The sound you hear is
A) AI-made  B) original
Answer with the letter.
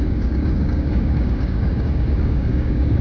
A